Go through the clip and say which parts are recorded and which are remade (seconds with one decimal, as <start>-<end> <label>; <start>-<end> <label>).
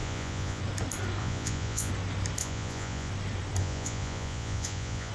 0.0-0.6 remade; 0.6-1.2 recorded; 1.2-1.9 remade; 1.9-2.4 recorded; 2.4-3.1 remade; 3.1-3.6 recorded; 3.6-5.1 remade